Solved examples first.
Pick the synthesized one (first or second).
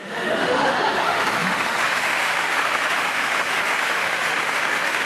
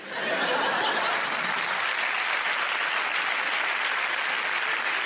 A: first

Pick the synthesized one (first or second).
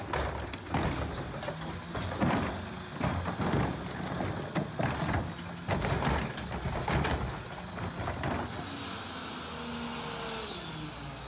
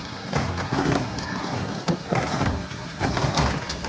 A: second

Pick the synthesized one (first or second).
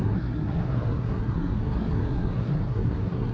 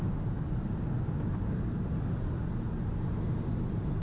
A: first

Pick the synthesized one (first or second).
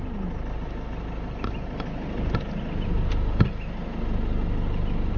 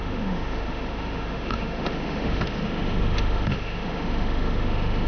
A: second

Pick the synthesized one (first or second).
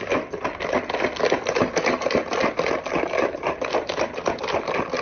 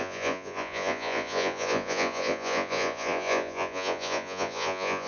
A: second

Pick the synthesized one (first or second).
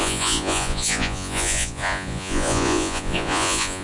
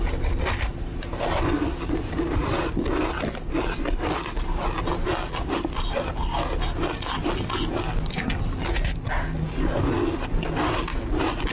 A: first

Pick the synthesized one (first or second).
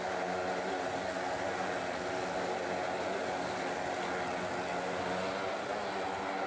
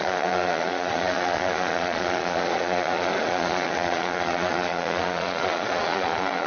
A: second